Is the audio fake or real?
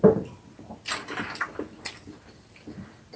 real